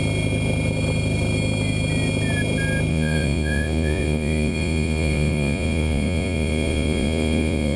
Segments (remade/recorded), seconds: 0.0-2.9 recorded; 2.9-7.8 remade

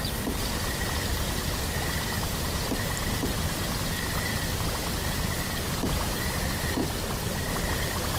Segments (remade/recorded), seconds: 0.0-8.2 recorded

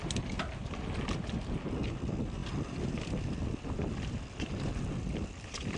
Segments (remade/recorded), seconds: 0.0-5.8 recorded